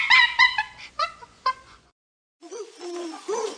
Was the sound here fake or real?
fake